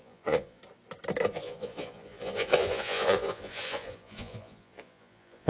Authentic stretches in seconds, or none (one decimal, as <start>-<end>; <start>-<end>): 0.6-1.3